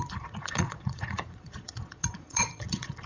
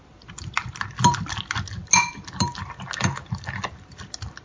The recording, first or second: second